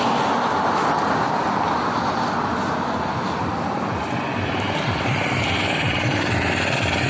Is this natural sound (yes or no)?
yes